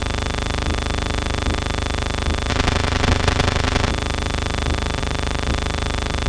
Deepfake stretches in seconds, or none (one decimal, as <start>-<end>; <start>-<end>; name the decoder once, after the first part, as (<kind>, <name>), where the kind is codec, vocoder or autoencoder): 2.5-3.9 (vocoder, WaveNeXt)